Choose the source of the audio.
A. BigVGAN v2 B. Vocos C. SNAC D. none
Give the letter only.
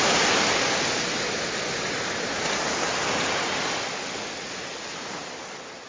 D